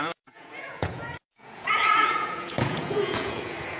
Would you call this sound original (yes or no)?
no